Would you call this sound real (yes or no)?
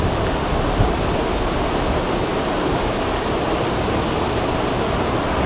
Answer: yes